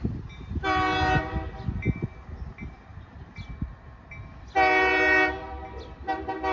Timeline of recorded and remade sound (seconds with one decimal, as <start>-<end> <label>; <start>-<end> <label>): 0.0-6.5 recorded